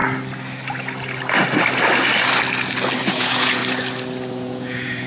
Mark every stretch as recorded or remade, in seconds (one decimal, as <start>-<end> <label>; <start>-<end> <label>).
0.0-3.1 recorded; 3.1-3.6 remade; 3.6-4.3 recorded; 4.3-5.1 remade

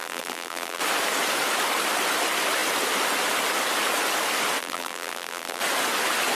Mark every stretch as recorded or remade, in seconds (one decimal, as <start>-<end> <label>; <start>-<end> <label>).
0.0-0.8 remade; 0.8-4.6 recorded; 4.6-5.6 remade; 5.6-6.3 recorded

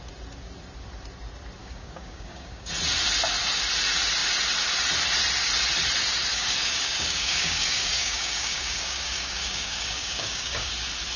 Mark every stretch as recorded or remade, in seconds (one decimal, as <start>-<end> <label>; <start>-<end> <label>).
0.0-1.6 recorded; 1.6-2.7 remade; 2.7-6.3 recorded; 6.3-10.7 remade; 10.7-11.2 recorded